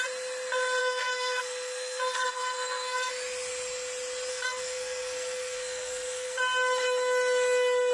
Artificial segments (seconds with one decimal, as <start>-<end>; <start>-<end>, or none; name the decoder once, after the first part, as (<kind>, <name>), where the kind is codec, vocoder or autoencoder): 0.8-3.1 (codec, SNAC); 4.3-6.4